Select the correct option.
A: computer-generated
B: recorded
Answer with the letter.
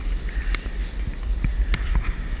B